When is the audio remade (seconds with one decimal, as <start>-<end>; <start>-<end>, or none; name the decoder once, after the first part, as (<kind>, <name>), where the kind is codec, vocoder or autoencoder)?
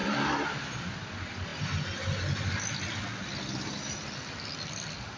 0.0-0.9 (vocoder, BigVGAN v2)